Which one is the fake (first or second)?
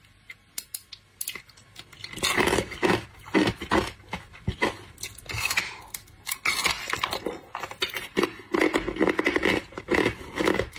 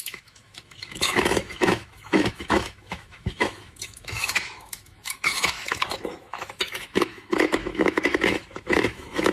second